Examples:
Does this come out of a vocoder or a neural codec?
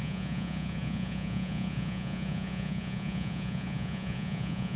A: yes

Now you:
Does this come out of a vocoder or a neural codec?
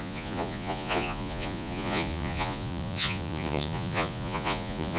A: yes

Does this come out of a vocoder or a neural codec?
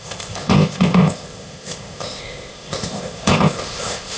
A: yes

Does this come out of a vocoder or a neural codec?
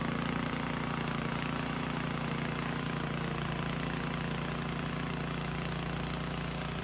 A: no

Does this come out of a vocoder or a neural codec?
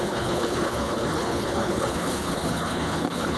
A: yes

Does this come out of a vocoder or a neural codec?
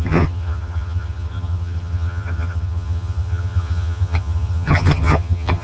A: yes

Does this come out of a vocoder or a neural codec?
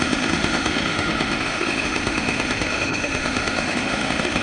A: yes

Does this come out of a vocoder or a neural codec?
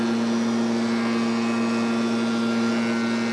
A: no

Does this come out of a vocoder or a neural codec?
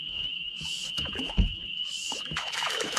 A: yes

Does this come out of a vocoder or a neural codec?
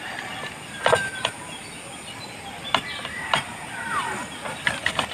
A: no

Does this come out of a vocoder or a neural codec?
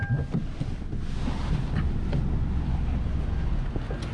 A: no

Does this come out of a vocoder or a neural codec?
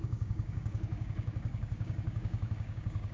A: yes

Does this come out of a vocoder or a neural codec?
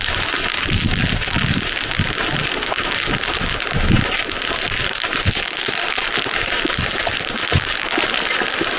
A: no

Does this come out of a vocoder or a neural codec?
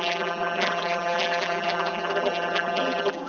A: yes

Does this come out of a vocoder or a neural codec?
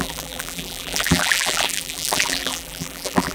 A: yes